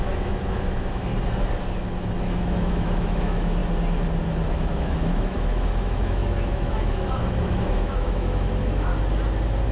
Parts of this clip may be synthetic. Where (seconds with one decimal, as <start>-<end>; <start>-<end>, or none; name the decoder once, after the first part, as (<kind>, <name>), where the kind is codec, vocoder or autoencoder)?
0.0-1.1 (autoencoder, DAC-VAE); 2.1-3.6; 4.5-8.9